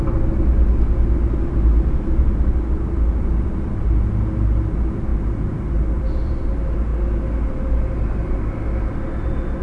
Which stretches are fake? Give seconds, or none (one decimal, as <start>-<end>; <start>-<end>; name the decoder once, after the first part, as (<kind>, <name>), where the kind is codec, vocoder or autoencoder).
none